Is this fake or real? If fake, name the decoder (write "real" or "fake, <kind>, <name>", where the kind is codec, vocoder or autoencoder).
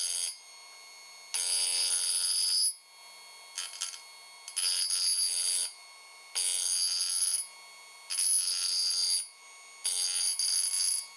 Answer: real